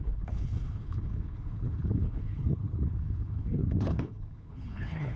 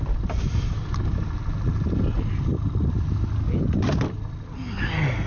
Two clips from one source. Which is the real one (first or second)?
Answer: second